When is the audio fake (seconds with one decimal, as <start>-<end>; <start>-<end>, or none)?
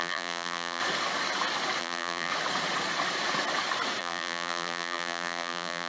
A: 0.0-0.8; 1.8-2.3; 4.0-5.9